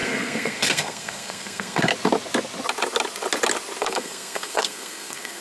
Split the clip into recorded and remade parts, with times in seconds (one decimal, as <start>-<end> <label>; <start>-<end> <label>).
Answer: 0.0-1.9 remade; 1.9-3.8 recorded; 3.8-5.4 remade